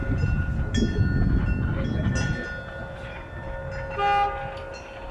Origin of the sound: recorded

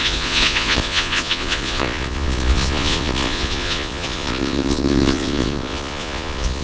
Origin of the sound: remade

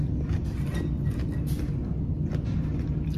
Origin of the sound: recorded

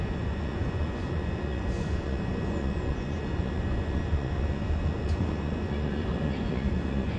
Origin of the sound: remade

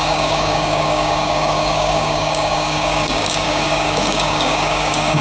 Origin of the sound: remade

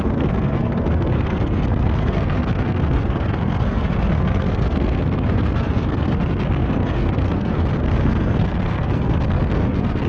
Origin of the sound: remade